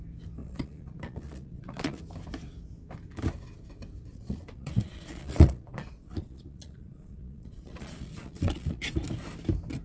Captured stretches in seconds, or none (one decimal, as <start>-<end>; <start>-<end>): 0.0-0.4; 2.0-4.1; 9.0-9.8